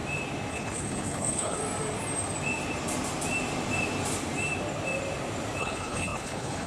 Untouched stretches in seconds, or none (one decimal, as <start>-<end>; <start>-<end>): 0.0-0.5; 1.6-5.6